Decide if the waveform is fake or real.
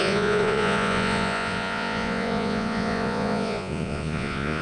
fake